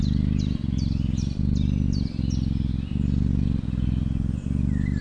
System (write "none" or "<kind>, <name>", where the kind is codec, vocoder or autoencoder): none